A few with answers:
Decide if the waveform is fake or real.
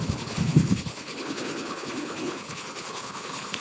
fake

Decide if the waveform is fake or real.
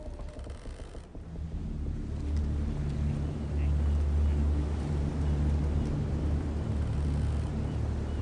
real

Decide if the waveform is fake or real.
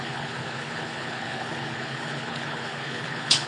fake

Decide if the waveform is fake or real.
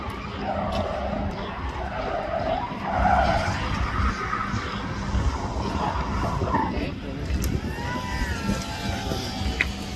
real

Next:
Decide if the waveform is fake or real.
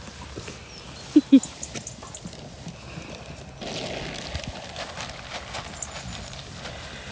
real